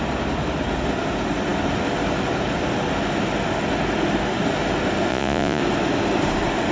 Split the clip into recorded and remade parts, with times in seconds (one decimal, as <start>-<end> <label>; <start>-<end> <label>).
0.0-5.1 recorded; 5.1-5.6 remade; 5.6-6.7 recorded